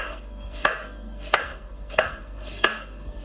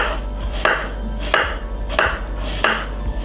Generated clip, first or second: first